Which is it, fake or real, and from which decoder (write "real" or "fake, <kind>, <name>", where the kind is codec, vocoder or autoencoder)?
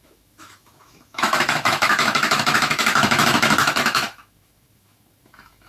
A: fake, autoencoder, DAC-VAE